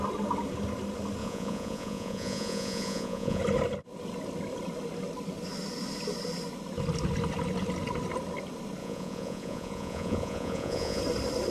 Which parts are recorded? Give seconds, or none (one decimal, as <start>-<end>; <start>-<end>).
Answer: 0.0-1.2; 3.4-8.8; 11.0-11.5